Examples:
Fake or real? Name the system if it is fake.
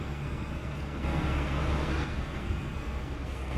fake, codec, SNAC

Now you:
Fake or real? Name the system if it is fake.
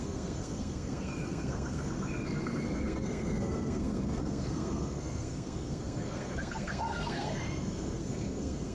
fake, codec, SNAC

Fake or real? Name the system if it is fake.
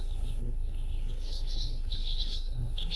fake, codec, SNAC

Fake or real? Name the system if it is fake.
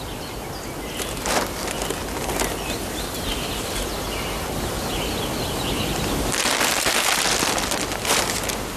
real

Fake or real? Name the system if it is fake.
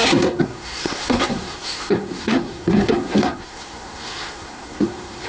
fake, codec, SNAC